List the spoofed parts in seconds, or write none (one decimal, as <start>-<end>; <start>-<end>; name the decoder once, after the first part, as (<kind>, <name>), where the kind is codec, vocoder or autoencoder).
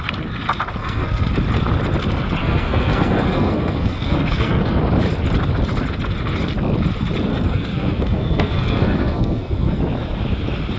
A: 0.8-1.3 (codec, SNAC); 2.4-4.8; 7.3-9.8